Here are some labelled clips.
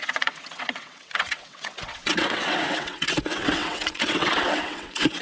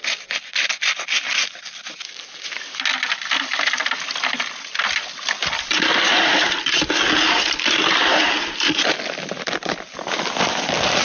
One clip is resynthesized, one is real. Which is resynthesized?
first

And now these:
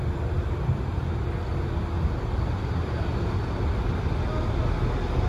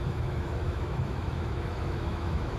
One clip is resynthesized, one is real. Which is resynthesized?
second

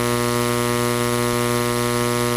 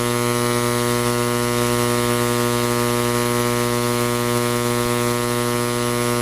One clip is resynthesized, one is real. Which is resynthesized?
second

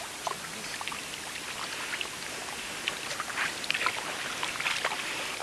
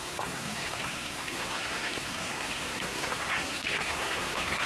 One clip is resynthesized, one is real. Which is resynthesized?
second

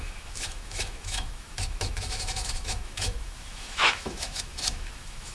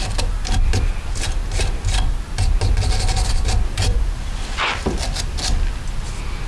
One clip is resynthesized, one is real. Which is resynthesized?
first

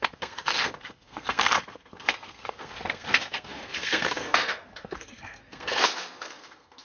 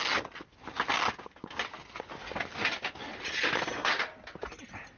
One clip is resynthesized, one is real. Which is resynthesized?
first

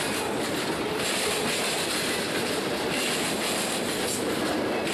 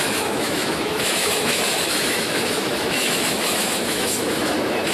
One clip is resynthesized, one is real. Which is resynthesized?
second